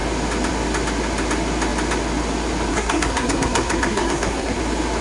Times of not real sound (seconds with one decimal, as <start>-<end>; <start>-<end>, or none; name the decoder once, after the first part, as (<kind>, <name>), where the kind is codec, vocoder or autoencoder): 2.7-4.6 (codec, SNAC)